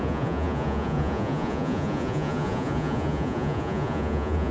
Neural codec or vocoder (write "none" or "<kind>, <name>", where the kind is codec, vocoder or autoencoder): vocoder, Vocos